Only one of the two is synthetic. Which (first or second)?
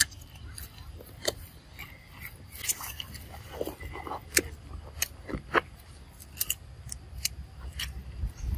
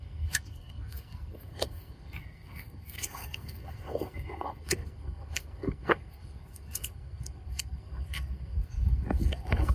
second